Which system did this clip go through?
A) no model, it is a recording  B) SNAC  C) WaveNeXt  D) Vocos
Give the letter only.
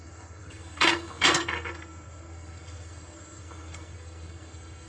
B